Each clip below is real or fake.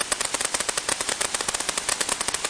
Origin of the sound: real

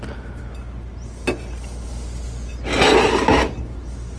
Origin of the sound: real